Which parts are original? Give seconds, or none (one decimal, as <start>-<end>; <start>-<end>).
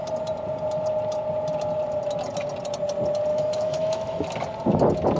0.0-3.3; 4.2-5.2